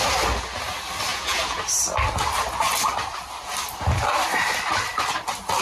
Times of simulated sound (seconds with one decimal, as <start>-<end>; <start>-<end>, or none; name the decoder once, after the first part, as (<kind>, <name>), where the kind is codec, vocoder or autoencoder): 1.1-1.6 (vocoder, Vocos)

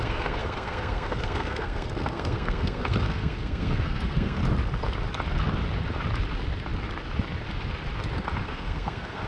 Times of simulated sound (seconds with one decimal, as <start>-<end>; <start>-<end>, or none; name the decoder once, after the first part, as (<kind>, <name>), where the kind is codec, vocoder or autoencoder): 0.0-4.4 (codec, SNAC); 8.4-9.3

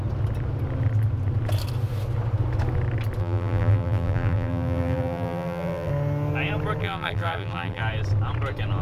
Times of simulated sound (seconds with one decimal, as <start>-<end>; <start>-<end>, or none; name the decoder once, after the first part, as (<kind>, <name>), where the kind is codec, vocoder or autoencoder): 3.2-5.9 (vocoder, BigVGAN v2); 6.8-7.8

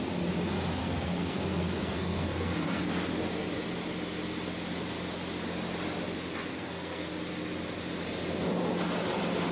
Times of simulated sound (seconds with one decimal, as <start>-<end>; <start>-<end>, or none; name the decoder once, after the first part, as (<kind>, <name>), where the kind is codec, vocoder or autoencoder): 0.8-2.9 (codec, SNAC); 6.5-7.1

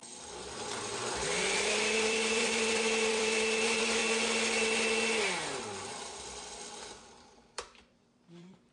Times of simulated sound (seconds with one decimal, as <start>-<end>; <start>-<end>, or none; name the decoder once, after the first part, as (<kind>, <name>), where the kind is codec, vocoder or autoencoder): 0.0-4.0 (vocoder, BigVGAN v2); 5.6-8.7